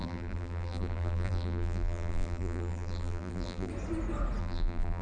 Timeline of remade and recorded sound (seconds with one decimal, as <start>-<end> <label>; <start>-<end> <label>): 0.0-3.7 remade; 3.7-4.4 recorded; 4.4-5.0 remade